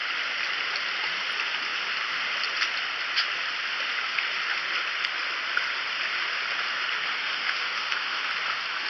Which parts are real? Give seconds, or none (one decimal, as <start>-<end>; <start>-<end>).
0.0-7.2; 8.2-8.9